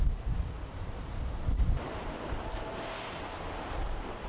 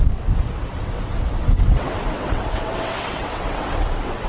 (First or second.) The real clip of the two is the first